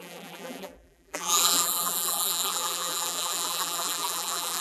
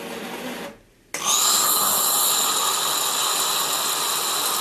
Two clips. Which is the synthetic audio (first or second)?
first